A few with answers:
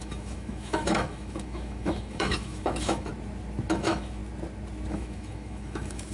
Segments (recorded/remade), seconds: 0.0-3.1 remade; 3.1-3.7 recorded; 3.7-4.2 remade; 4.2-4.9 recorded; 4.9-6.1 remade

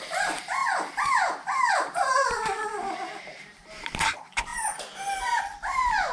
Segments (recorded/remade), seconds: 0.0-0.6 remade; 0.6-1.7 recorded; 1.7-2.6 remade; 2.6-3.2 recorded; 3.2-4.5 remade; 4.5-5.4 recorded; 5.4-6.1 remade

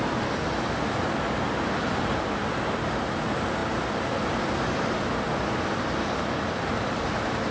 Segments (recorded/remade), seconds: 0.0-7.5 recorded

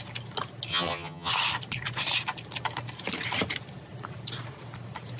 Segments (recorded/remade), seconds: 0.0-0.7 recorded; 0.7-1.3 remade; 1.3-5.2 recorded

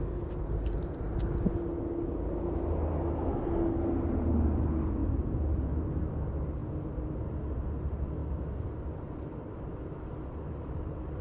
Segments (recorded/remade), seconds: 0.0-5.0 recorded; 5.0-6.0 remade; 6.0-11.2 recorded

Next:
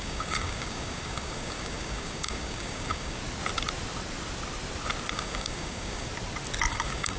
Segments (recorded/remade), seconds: 0.0-3.2 remade; 3.2-5.1 recorded; 5.1-6.1 remade; 6.1-6.7 recorded; 6.7-7.2 remade

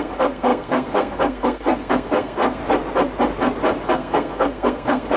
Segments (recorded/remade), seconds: 0.0-2.6 remade; 2.6-3.9 recorded; 3.9-5.2 remade

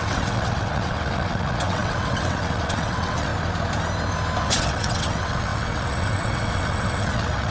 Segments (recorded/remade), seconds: 0.0-3.3 remade; 3.3-4.4 recorded; 4.4-7.5 remade